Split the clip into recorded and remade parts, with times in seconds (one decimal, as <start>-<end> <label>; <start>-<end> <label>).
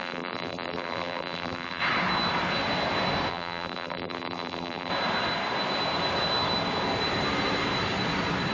0.0-1.8 remade; 1.8-3.3 recorded; 3.3-4.9 remade; 4.9-8.5 recorded